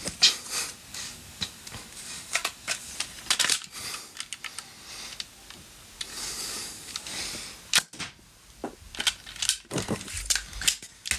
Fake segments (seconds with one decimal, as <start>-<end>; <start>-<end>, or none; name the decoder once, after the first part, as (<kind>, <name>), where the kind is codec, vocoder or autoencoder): 0.9-2.9 (codec, DAC); 6.1-7.2